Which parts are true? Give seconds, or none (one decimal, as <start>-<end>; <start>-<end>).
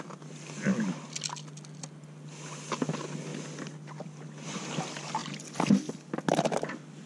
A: 0.0-7.1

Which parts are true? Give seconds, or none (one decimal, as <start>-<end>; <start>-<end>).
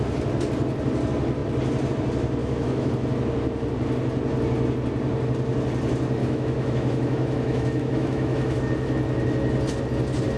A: 0.0-2.4; 2.9-6.2; 8.6-10.4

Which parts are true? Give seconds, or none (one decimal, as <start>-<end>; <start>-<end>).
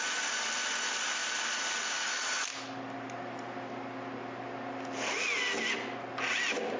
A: 0.0-6.8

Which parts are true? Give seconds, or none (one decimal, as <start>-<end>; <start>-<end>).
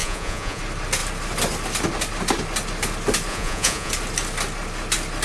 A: 0.6-3.3; 3.9-5.2